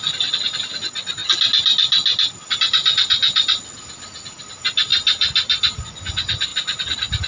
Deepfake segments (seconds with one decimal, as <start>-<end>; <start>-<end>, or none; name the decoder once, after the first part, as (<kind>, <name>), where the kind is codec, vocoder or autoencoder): none